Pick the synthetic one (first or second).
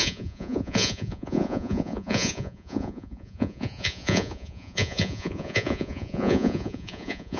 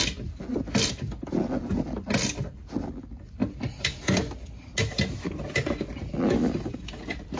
first